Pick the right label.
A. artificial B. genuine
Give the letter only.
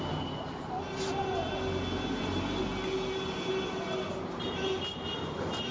B